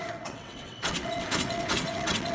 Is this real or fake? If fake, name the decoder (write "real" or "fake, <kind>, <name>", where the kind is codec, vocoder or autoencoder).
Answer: fake, vocoder, WaveNeXt